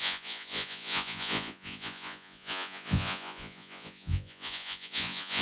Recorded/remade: remade